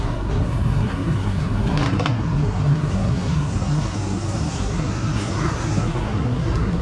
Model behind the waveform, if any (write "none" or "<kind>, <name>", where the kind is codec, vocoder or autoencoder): codec, SNAC